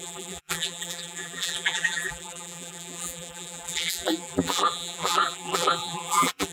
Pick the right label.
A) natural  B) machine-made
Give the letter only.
B